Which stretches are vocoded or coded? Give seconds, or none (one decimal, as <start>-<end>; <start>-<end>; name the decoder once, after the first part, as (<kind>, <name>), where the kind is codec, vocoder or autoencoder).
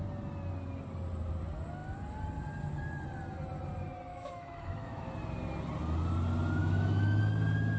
4.1-5.1 (autoencoder, DAC-VAE); 6.6-7.2